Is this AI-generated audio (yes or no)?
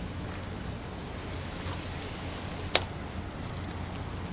no